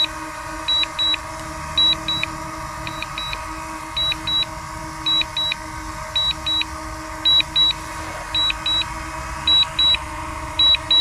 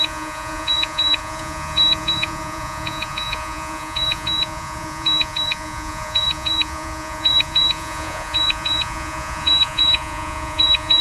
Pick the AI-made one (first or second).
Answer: second